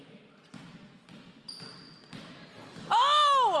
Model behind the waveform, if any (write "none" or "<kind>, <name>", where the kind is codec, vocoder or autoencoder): none